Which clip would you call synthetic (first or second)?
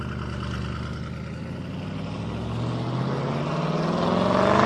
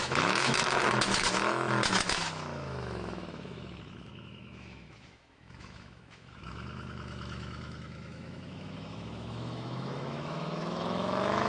second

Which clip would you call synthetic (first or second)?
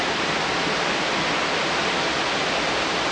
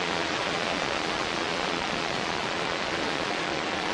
second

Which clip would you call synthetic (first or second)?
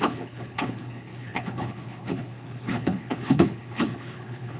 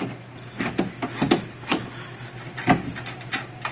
first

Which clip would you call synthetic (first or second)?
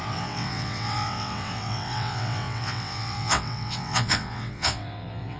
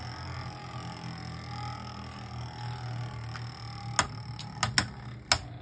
first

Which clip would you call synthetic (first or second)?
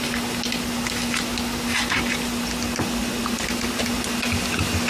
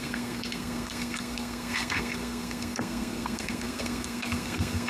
second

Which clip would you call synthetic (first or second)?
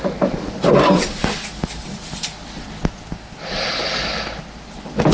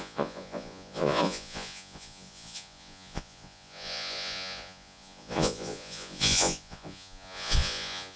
second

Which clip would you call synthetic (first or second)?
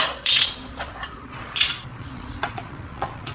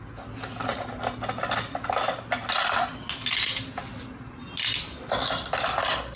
first